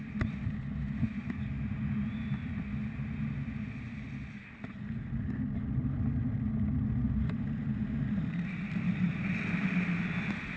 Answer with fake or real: real